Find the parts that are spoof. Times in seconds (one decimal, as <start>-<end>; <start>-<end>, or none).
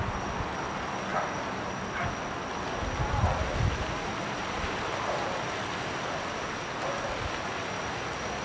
none